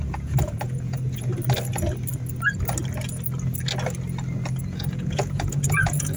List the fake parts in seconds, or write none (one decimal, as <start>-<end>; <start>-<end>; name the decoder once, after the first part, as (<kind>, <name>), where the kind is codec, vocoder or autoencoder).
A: 0.0-1.3 (vocoder, Vocos); 4.6-6.2